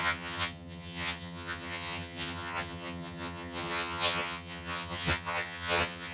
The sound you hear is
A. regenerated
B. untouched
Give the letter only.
A